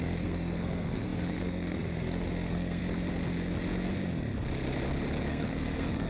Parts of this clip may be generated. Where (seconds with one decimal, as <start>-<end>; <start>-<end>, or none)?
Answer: 0.0-2.8; 5.3-6.1